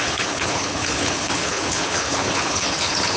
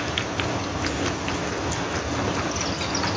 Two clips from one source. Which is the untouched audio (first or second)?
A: second